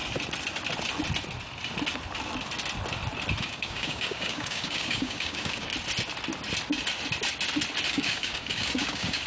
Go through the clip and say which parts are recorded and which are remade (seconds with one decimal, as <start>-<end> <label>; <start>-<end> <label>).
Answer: 0.0-3.4 recorded; 3.4-5.7 remade; 5.7-7.9 recorded; 7.9-9.3 remade